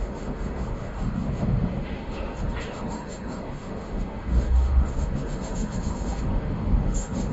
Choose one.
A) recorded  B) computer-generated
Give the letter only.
B